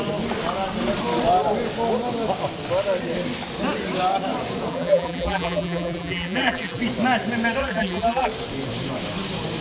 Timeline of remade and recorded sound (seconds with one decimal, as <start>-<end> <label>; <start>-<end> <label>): 0.0-4.7 recorded; 4.7-6.8 remade; 6.8-7.6 recorded; 7.6-8.3 remade; 8.3-9.6 recorded